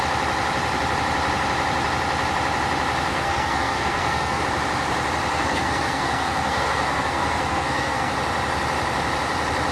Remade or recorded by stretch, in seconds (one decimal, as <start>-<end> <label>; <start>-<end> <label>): 0.0-3.1 recorded; 3.1-4.4 remade; 4.4-5.3 recorded; 5.3-8.1 remade; 8.1-9.7 recorded